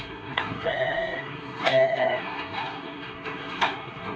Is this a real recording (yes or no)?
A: no